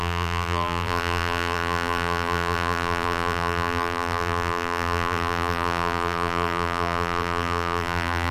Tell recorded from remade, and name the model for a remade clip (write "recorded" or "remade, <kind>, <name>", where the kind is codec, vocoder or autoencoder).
remade, vocoder, BigVGAN v2